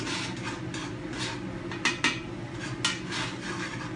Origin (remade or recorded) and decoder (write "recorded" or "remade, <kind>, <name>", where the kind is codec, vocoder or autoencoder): recorded